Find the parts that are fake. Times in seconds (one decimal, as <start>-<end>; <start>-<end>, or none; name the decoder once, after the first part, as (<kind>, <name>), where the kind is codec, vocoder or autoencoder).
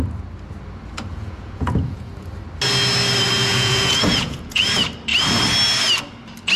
1.1-2.1 (vocoder, Vocos); 3.4-4.6